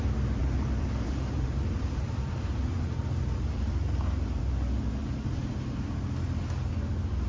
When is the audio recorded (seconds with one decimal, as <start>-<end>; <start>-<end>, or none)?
0.0-0.4; 4.4-7.3